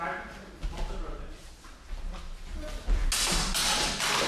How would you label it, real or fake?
real